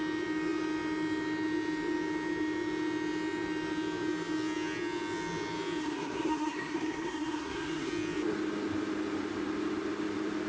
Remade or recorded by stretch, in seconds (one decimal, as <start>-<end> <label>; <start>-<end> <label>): 0.0-5.8 recorded; 5.8-7.9 remade; 7.9-10.5 recorded